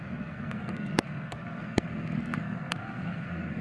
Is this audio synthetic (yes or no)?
yes